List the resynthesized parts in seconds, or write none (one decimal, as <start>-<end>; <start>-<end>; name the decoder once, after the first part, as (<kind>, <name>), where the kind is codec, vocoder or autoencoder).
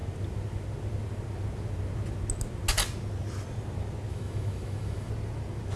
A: 4.1-5.1 (autoencoder, DAC-VAE)